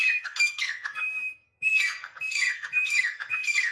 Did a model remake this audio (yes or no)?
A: yes